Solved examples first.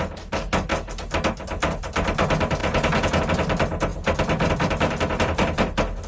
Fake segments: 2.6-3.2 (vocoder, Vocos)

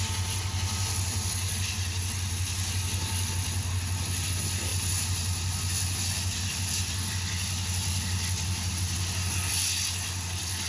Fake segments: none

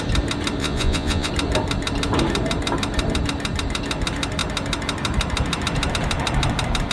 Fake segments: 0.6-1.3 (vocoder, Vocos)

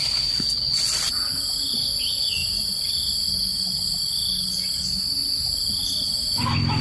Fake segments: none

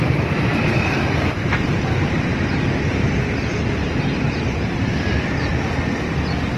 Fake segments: 0.0-5.5 (vocoder, BigVGAN v2)